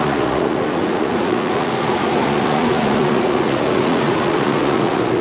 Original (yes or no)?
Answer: no